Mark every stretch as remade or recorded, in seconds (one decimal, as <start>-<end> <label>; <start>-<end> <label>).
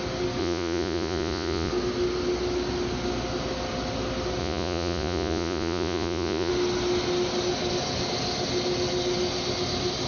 0.0-0.4 recorded; 0.4-1.7 remade; 1.7-4.4 recorded; 4.4-6.5 remade; 6.5-10.1 recorded